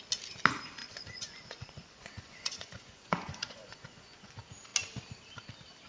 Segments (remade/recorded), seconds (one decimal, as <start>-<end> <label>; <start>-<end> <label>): 0.0-0.8 recorded; 0.8-4.3 remade; 4.3-5.9 recorded